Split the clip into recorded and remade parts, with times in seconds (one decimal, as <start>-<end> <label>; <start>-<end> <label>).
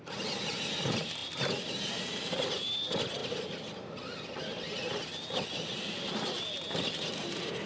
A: 0.0-7.7 recorded